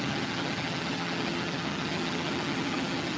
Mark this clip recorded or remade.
remade